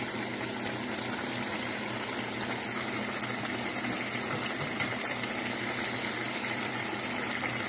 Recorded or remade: recorded